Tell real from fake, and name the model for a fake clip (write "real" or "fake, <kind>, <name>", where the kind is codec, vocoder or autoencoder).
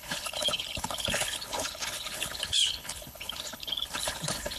fake, codec, HILCodec